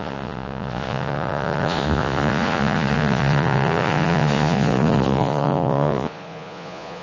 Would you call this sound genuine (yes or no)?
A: no